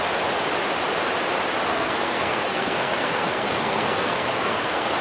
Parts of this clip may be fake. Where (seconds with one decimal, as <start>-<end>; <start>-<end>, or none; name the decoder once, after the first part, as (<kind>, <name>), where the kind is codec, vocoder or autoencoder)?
1.7-5.0 (codec, SNAC)